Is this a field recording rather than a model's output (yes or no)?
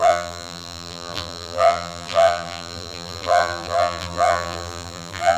no